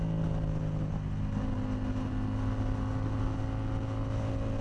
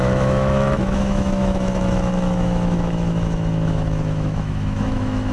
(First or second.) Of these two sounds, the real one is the first